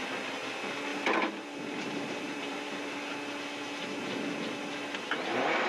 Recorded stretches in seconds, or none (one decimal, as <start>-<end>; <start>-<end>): 0.0-0.9; 2.8-5.7